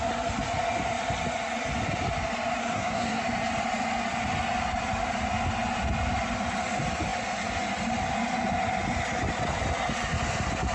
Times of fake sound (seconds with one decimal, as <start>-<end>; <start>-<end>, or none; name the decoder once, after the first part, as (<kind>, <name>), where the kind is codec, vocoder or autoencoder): 2.6-3.2 (codec, SNAC)